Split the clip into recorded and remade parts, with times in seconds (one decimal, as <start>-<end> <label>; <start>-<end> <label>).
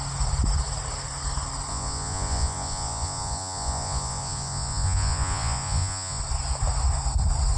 0.0-1.7 recorded; 1.7-6.2 remade; 6.2-7.6 recorded